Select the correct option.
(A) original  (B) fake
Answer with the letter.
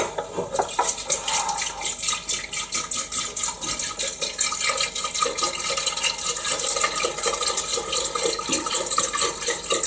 A